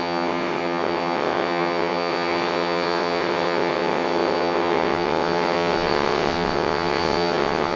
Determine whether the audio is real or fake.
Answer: fake